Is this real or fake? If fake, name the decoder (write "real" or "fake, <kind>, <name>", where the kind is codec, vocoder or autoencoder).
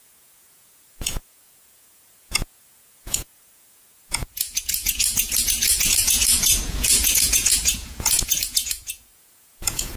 fake, vocoder, Vocos